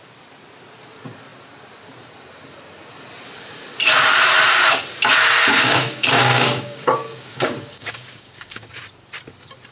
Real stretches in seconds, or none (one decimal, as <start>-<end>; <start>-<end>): 0.0-5.5; 8.7-9.7